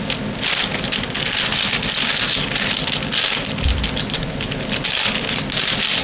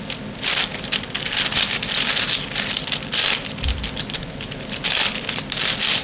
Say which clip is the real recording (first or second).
first